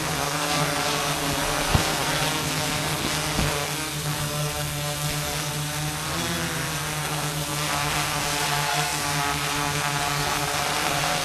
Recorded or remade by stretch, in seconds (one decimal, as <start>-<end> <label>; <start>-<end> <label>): 0.0-5.5 remade; 5.5-7.0 recorded; 7.0-11.2 remade